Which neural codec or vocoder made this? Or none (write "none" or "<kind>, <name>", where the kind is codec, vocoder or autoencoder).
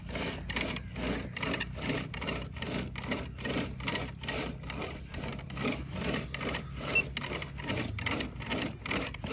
none